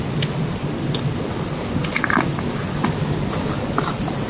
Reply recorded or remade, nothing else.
recorded